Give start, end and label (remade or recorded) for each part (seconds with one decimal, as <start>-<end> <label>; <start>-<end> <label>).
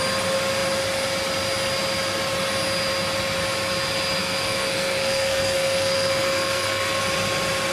0.0-4.2 recorded; 4.2-7.0 remade; 7.0-7.7 recorded